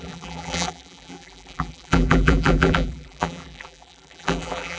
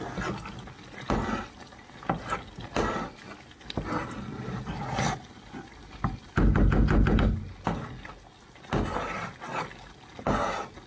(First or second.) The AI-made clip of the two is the first